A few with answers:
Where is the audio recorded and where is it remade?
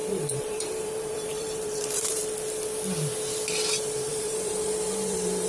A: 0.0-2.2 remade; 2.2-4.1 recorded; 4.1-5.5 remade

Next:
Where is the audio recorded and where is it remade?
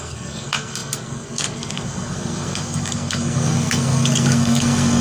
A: 0.0-5.0 remade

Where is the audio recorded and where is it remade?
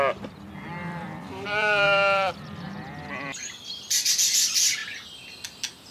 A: 0.0-0.8 recorded; 0.8-4.1 remade; 4.1-4.8 recorded; 4.8-5.3 remade; 5.3-5.9 recorded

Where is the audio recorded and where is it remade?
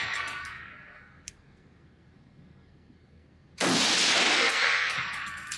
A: 0.0-3.5 remade; 3.5-4.3 recorded; 4.3-5.6 remade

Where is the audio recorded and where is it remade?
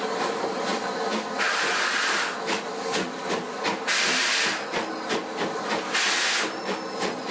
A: 0.0-7.3 recorded